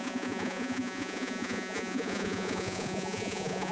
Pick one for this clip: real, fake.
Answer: fake